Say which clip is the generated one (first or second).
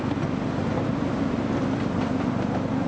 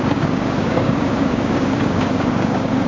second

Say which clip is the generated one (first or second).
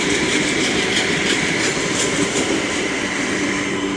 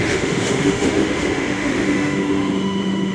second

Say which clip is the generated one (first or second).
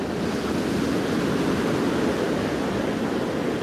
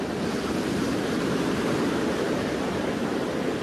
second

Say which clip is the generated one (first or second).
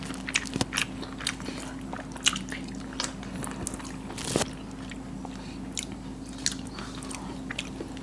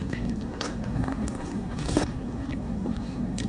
second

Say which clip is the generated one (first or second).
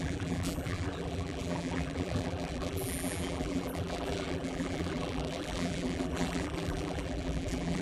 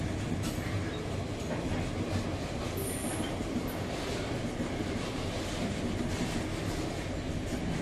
first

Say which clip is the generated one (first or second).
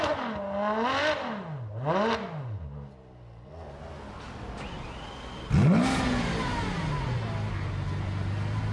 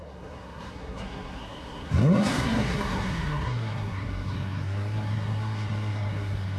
second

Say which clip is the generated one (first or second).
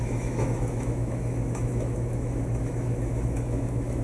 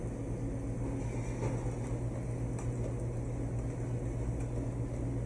first